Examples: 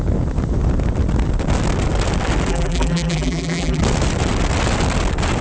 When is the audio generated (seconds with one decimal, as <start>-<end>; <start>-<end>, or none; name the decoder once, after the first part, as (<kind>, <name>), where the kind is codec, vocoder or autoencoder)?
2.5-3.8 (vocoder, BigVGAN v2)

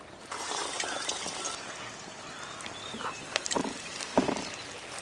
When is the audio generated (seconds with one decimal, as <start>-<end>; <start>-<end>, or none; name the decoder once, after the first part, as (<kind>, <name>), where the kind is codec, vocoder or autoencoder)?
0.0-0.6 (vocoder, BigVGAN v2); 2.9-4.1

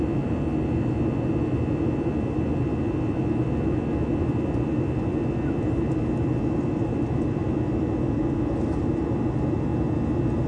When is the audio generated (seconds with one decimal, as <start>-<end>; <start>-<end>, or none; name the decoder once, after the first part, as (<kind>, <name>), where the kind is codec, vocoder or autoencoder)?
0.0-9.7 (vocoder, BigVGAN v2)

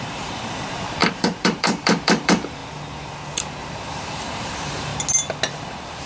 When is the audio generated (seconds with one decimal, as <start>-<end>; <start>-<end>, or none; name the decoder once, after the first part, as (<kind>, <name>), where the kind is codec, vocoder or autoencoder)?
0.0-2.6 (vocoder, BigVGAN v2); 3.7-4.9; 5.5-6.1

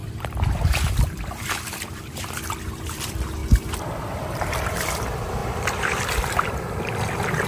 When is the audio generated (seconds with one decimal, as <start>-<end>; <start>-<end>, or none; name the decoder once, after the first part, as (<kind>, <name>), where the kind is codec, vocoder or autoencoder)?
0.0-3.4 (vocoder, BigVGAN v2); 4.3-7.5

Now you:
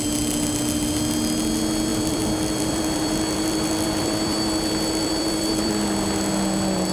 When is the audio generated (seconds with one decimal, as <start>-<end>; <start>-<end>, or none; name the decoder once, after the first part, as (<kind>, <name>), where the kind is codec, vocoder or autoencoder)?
1.9-5.7 (vocoder, BigVGAN v2)

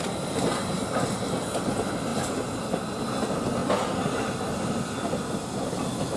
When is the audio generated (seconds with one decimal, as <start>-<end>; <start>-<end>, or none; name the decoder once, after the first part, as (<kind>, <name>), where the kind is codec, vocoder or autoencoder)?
none

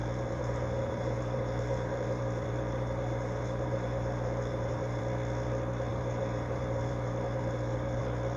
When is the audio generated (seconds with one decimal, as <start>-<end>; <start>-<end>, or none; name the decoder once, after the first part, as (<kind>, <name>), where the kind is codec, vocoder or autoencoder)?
0.0-5.0 (vocoder, BigVGAN v2); 5.9-8.0